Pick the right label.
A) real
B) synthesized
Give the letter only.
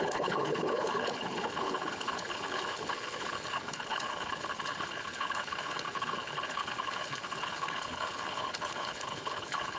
B